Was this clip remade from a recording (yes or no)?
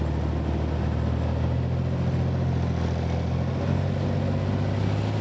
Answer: no